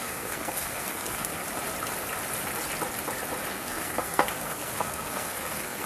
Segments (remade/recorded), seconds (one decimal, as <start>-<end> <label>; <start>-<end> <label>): 0.0-1.4 remade; 1.4-3.5 recorded; 3.5-5.9 remade